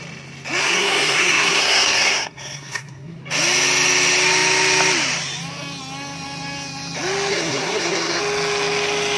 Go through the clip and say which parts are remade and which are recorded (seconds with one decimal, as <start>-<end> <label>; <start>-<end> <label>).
0.0-0.6 recorded; 0.6-3.2 remade; 3.2-7.3 recorded; 7.3-8.2 remade; 8.2-9.2 recorded